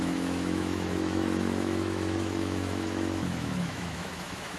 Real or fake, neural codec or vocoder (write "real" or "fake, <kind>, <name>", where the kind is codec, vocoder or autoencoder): fake, autoencoder, DAC-VAE